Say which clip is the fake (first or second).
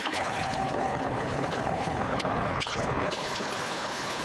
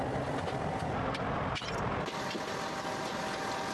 first